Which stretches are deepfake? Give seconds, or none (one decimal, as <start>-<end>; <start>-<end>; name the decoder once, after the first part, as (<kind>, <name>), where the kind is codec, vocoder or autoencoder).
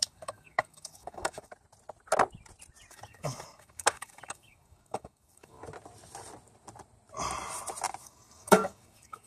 0.0-1.5 (codec, DAC); 2.9-5.6; 8.0-9.3